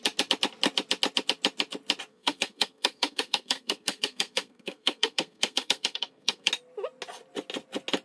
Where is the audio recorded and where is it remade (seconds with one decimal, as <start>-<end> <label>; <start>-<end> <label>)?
0.0-2.1 recorded; 2.1-6.5 remade; 6.5-8.0 recorded